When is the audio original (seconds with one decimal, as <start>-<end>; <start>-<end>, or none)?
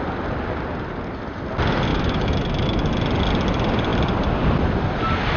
0.0-1.9; 2.9-5.4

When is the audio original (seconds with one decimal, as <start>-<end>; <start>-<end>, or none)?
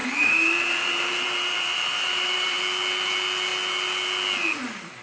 2.6-5.0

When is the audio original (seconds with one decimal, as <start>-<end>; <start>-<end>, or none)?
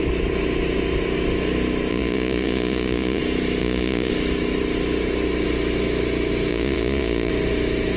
0.0-1.9; 3.2-3.6; 4.1-6.5; 7.3-8.0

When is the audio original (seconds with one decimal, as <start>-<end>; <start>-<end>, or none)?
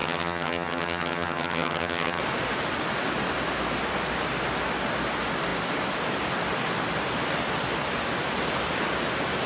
2.2-9.5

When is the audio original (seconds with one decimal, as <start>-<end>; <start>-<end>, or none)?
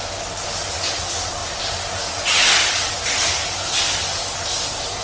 0.0-5.0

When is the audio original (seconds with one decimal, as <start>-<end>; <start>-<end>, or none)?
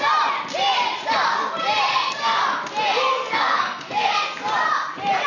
0.0-1.9; 2.4-3.1; 4.1-5.3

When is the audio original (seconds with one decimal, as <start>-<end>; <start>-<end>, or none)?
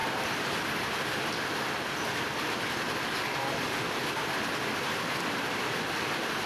0.0-6.5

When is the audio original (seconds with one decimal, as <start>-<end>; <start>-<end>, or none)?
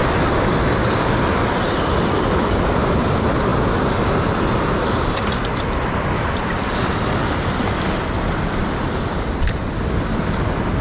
0.0-10.8